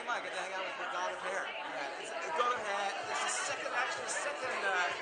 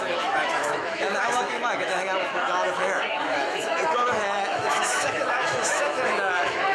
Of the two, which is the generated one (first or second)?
second